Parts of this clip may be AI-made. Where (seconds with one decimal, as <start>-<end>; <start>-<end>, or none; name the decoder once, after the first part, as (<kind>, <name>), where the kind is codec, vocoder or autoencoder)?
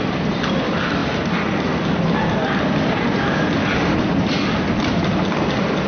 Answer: none